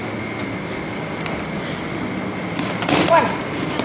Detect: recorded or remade recorded